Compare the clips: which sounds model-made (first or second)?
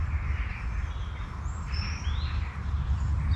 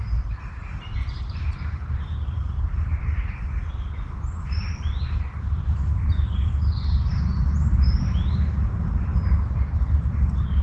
second